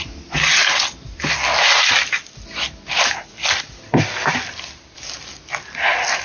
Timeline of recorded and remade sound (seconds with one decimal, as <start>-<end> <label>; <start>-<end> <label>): 0.0-6.2 recorded